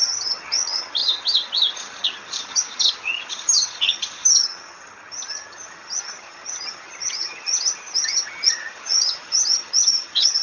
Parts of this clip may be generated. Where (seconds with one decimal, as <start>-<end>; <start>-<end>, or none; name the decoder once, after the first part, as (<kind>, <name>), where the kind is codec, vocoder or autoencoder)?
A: 0.0-10.4 (vocoder, HiFi-GAN)